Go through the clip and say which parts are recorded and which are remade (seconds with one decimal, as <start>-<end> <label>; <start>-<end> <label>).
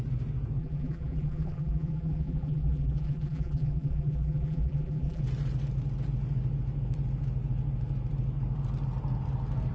0.0-0.6 recorded; 0.6-5.2 remade; 5.2-9.7 recorded